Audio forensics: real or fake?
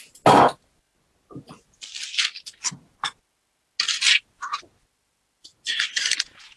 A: real